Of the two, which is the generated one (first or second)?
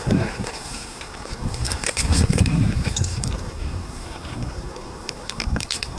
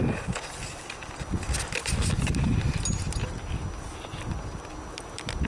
first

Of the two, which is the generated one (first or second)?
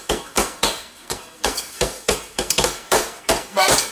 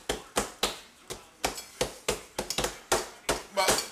first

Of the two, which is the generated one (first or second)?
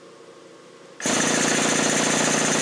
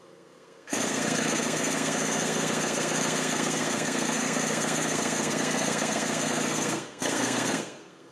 second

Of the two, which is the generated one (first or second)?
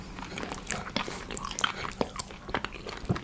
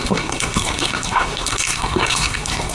second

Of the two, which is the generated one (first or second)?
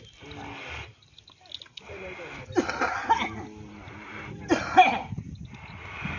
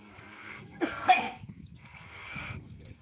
second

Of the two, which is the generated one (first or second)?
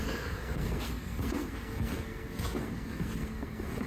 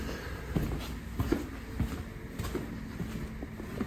first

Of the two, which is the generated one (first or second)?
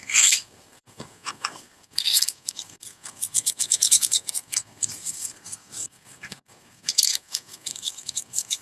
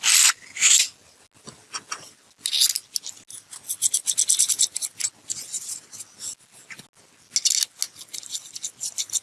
first